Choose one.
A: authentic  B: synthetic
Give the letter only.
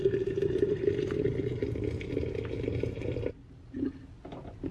B